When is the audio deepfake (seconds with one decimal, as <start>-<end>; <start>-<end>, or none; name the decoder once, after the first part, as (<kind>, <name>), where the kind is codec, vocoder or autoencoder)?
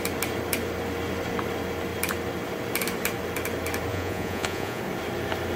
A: 3.9-4.8 (vocoder, Vocos)